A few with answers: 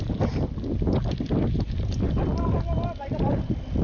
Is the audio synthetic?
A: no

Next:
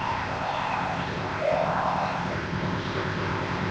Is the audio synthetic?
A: yes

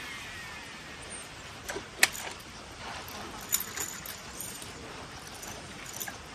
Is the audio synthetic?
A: yes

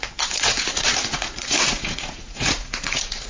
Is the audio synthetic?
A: yes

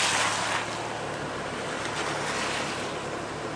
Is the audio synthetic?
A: no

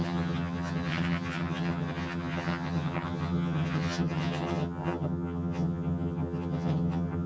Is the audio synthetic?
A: yes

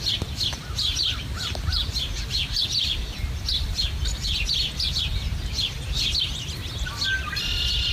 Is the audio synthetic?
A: no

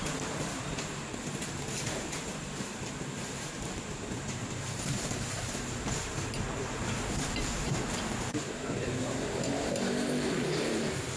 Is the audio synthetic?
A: yes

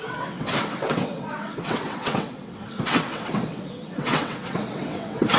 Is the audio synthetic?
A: yes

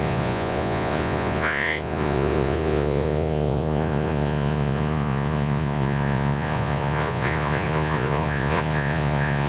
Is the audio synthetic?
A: yes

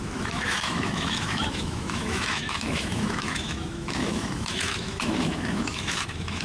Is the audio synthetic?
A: yes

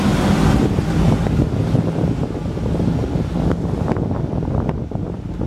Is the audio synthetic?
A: no